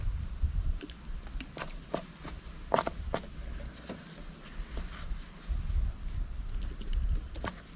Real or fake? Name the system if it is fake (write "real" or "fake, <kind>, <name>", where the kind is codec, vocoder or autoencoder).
real